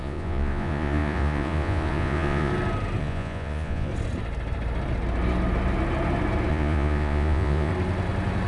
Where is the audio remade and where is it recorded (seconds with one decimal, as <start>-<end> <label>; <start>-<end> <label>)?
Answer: 0.0-2.5 remade; 2.5-3.0 recorded; 3.0-3.9 remade; 3.9-6.5 recorded; 6.5-7.7 remade; 7.7-8.5 recorded